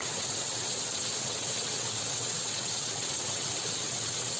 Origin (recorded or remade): remade